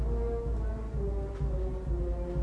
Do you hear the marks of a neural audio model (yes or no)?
no